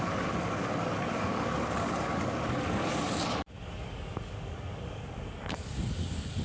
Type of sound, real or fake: fake